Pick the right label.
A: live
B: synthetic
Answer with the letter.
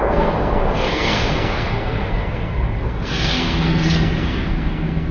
B